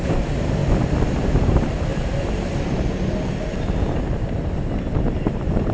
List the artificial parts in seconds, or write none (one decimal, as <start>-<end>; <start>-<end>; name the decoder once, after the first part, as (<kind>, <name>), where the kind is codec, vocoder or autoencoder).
0.0-0.6 (vocoder, BigVGAN v2); 1.4-1.9; 5.3-5.7